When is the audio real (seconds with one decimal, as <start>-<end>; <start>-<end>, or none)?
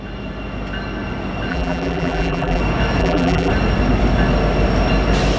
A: 0.0-1.5; 2.6-3.0; 3.5-5.4